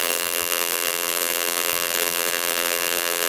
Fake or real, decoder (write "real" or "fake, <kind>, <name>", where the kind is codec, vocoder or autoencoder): fake, vocoder, BigVGAN v2